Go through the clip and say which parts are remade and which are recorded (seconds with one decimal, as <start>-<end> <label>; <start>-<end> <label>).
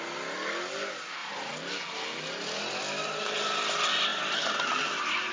0.0-5.3 recorded